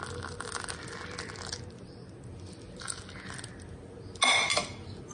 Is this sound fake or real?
real